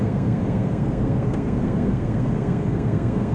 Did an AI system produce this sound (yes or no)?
yes